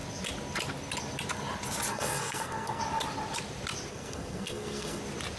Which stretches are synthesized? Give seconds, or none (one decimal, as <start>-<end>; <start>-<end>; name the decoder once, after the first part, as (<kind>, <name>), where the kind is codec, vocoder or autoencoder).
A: 1.9-2.8 (codec, SNAC); 3.9-5.0